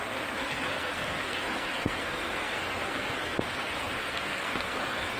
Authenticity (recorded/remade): remade